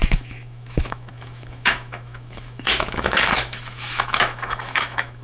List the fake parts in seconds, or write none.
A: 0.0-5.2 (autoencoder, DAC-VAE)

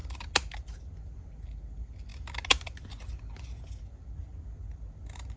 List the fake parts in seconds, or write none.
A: none

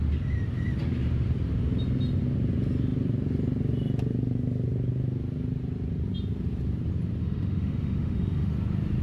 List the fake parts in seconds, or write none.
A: 7.2-8.5 (autoencoder, DAC-VAE)

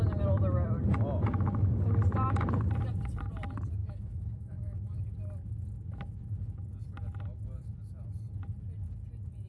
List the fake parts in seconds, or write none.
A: 3.8-5.0 (autoencoder, DAC-VAE)

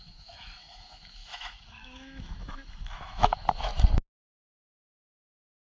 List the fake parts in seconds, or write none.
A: 0.0-3.7 (autoencoder, DAC-VAE); 5.0-5.6

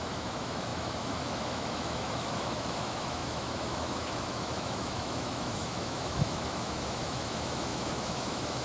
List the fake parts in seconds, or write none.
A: 0.0-8.6 (autoencoder, DAC-VAE)

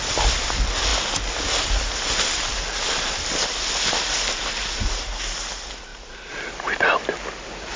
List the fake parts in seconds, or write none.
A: none